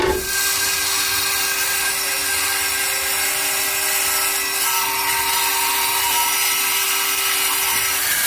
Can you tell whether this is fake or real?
real